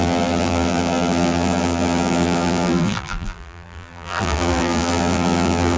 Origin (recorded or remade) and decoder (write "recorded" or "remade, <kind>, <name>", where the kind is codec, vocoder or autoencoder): remade, vocoder, BigVGAN v2